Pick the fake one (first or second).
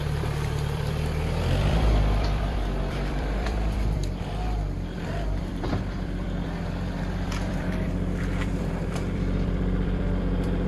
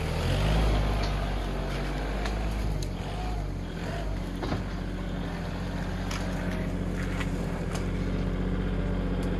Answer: first